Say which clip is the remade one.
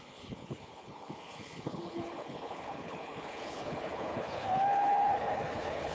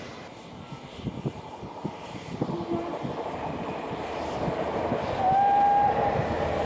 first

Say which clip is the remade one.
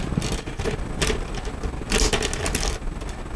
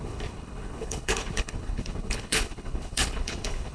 second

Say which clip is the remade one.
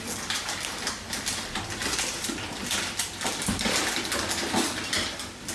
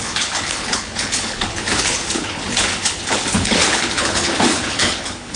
second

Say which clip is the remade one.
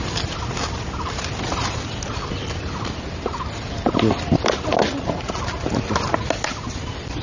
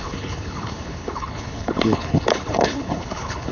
second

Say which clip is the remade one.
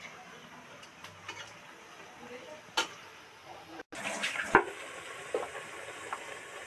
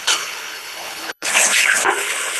second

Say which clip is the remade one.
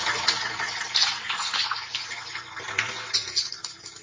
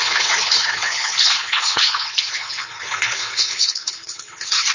second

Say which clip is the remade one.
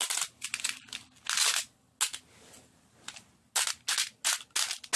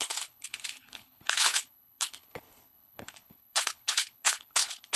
second